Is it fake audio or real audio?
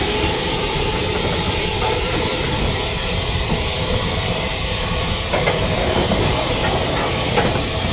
fake